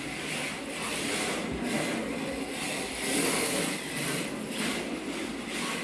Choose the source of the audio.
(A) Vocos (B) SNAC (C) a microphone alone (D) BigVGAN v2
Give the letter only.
C